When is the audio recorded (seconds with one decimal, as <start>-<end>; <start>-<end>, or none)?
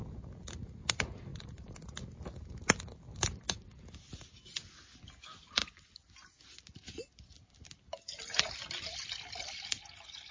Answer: 0.0-10.3